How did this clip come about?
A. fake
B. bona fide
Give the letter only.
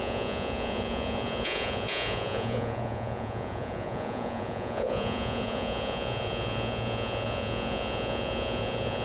A